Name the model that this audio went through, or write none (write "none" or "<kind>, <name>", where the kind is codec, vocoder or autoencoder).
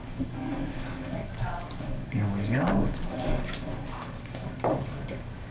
codec, DAC